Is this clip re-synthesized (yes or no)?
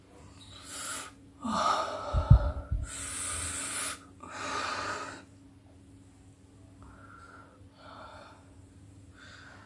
no